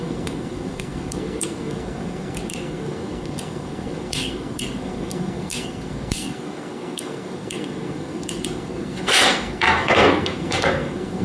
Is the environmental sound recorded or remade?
remade